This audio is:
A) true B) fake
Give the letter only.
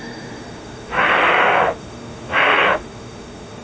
B